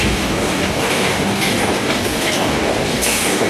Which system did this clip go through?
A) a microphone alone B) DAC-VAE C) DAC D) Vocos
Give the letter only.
C